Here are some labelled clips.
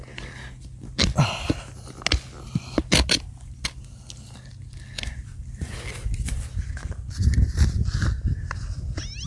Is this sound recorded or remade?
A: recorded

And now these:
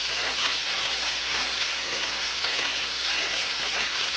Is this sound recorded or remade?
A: remade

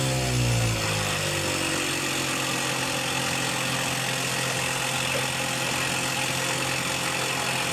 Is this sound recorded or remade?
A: recorded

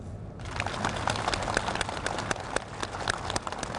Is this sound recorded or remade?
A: recorded